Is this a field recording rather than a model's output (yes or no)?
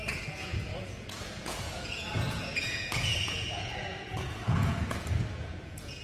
no